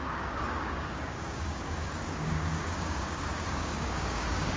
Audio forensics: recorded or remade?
remade